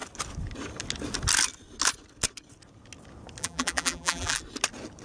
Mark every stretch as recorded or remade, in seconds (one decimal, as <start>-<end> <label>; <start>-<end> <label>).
0.0-3.4 recorded; 3.4-4.4 remade; 4.4-5.0 recorded